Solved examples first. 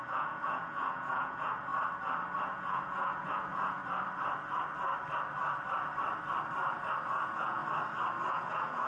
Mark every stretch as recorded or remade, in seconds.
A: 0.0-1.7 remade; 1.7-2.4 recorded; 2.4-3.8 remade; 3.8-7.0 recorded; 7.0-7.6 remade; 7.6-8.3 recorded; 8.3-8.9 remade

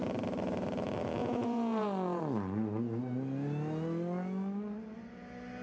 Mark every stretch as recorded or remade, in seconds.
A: 0.0-1.2 recorded; 1.2-2.2 remade; 2.2-5.6 recorded